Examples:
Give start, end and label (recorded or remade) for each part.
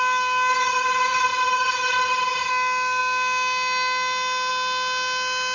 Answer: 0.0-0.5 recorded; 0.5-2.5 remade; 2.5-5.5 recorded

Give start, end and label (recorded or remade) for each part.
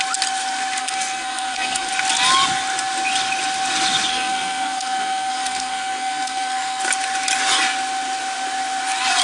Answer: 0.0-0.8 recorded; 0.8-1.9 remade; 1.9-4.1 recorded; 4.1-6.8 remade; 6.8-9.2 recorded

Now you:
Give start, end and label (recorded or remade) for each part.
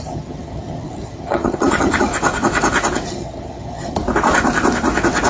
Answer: 0.0-2.1 remade; 2.1-3.1 recorded; 3.1-4.0 remade; 4.0-5.3 recorded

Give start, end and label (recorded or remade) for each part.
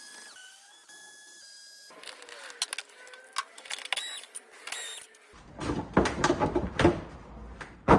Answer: 0.0-8.0 recorded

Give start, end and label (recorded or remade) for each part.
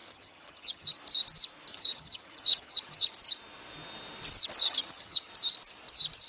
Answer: 0.0-1.0 remade; 1.0-1.7 recorded; 1.7-3.1 remade; 3.1-4.6 recorded; 4.6-5.3 remade; 5.3-6.3 recorded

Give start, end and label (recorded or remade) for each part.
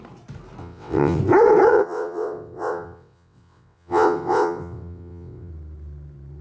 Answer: 0.0-0.6 recorded; 0.6-1.2 remade; 1.2-1.7 recorded; 1.7-5.5 remade; 5.5-6.4 recorded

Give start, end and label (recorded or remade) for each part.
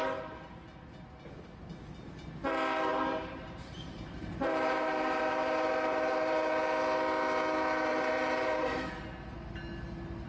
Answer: 0.0-2.9 recorded; 2.9-6.5 remade; 6.5-7.9 recorded; 7.9-8.9 remade; 8.9-10.3 recorded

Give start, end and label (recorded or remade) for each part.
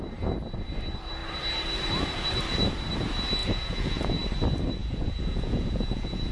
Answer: 0.0-3.4 recorded; 3.4-4.2 remade; 4.2-4.8 recorded; 4.8-6.3 remade